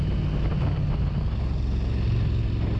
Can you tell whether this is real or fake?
real